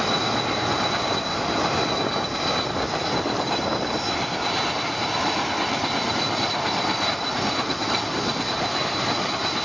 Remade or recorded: recorded